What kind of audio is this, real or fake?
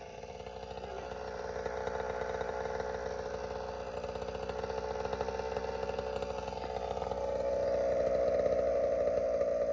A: fake